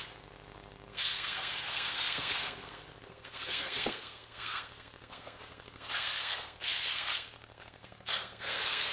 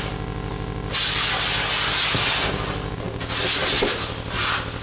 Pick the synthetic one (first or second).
first